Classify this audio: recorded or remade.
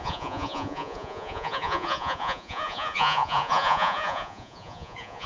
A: remade